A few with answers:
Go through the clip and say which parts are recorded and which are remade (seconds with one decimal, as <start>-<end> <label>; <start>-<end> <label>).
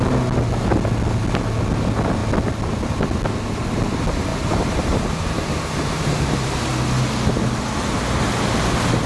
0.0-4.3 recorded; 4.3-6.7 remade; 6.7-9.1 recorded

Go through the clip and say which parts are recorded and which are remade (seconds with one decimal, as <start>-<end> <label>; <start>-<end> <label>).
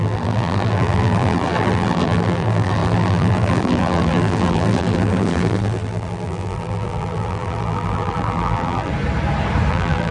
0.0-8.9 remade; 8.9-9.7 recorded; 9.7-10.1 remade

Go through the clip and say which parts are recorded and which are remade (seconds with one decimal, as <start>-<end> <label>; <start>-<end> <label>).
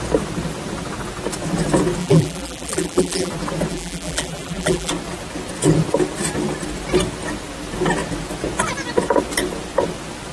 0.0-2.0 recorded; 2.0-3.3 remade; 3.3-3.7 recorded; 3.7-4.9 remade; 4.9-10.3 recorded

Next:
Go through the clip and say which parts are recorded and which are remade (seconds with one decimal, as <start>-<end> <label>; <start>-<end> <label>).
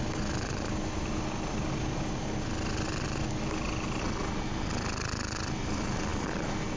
0.0-6.8 recorded